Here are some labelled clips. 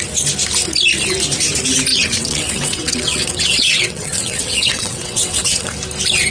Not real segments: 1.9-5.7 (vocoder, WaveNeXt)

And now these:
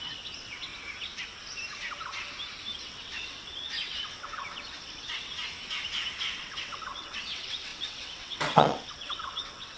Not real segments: 0.0-0.7 (vocoder, WaveNeXt); 2.8-5.3; 6.4-9.8